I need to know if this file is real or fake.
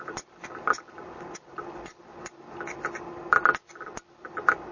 real